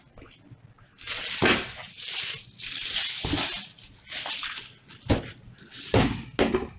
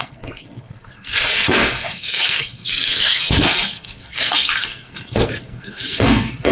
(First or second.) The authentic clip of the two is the first